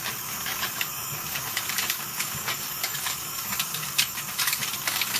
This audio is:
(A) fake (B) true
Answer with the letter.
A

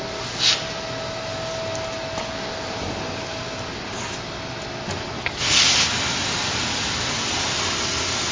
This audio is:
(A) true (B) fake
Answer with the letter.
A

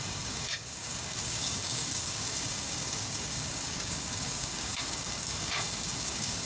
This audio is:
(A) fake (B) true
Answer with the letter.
A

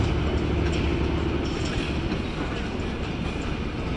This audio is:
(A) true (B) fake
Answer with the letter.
A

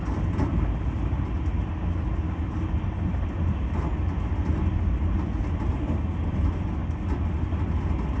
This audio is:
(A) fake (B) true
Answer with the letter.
B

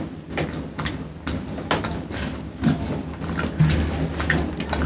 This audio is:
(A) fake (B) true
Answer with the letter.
B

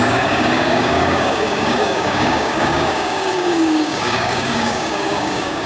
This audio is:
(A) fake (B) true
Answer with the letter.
A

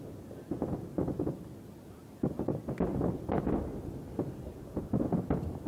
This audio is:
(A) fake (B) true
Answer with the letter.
B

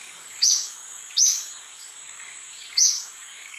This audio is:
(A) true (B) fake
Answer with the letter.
B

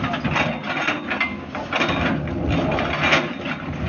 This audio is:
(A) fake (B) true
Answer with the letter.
B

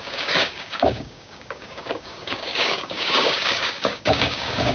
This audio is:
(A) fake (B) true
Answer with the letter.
A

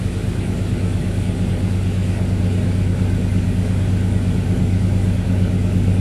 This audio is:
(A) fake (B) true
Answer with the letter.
A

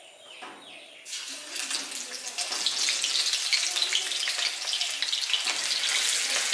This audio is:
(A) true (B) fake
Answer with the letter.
A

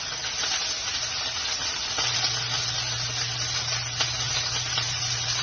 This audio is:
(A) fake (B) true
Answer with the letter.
B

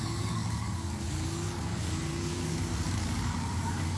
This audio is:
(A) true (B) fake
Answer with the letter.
B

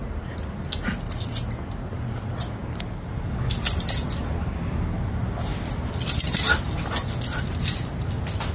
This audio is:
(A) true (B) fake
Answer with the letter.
A